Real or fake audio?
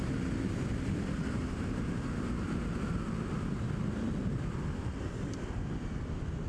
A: real